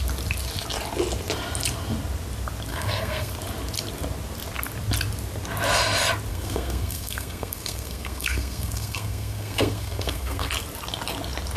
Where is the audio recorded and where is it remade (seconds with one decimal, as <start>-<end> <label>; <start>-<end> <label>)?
0.0-2.7 recorded; 2.7-3.3 remade; 3.3-6.3 recorded; 6.3-10.5 remade; 10.5-11.6 recorded